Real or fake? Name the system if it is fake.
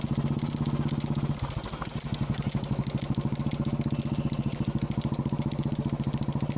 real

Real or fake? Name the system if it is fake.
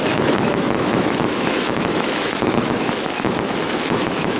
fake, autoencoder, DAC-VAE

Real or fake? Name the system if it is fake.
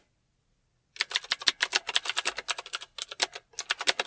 real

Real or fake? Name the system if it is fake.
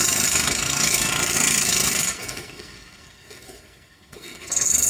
fake, codec, SNAC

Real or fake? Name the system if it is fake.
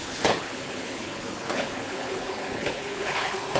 fake, codec, HILCodec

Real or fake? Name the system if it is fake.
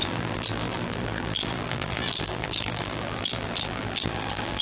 fake, vocoder, BigVGAN v2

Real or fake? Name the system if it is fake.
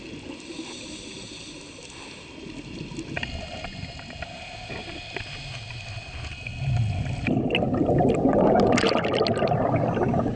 real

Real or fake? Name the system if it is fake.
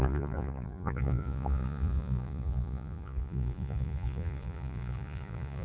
fake, vocoder, Vocos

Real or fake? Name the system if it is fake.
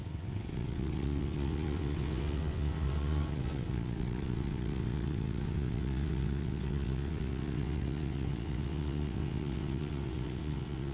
fake, vocoder, WaveNeXt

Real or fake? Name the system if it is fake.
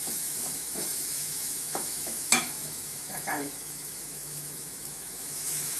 fake, autoencoder, DAC-VAE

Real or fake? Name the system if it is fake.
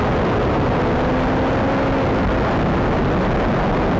real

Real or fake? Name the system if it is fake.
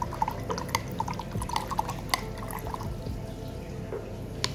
real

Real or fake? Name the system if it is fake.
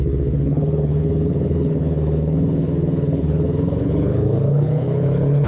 fake, codec, HILCodec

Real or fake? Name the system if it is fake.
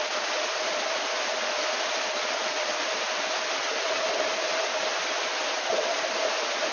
real